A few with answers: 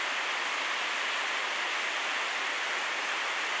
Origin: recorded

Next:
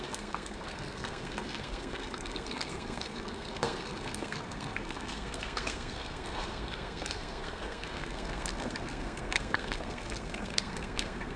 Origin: remade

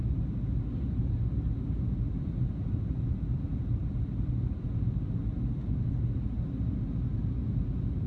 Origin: recorded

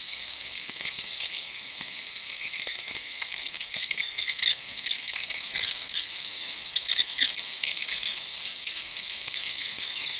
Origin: remade